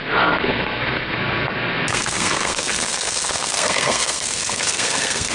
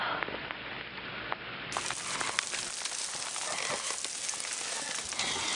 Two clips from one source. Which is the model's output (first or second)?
first